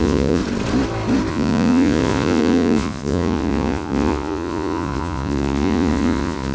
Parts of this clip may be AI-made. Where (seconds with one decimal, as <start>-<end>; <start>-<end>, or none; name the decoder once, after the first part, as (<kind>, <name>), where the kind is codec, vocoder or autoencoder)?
0.0-0.4 (vocoder, Vocos); 1.3-6.5